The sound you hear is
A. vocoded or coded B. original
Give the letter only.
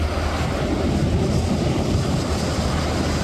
B